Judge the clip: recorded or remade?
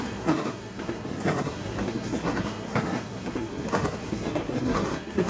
remade